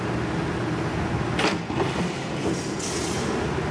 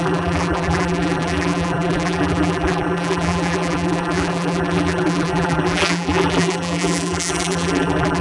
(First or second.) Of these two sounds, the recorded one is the first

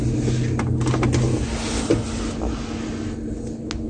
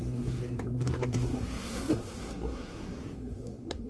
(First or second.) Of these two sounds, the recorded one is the first